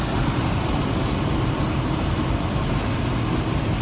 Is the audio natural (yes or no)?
yes